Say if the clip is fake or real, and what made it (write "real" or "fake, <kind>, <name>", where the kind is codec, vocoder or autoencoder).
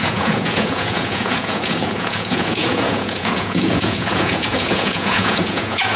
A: fake, vocoder, Vocos